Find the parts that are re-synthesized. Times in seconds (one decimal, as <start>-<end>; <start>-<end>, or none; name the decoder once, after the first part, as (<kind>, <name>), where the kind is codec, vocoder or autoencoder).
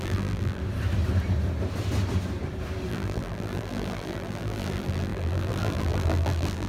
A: 0.0-0.6 (vocoder, BigVGAN v2); 2.9-6.7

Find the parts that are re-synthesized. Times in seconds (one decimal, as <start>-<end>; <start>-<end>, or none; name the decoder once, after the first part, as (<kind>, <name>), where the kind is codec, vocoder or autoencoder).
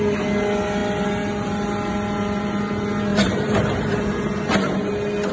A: 3.1-4.0 (vocoder, BigVGAN v2)